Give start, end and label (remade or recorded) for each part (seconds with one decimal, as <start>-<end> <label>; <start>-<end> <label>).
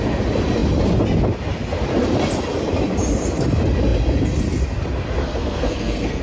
0.0-5.2 recorded; 5.2-6.2 remade